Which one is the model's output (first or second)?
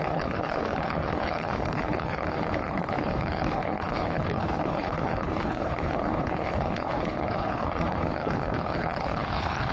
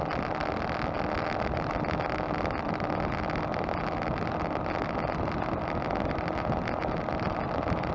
first